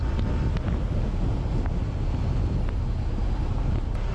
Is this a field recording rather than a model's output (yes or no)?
yes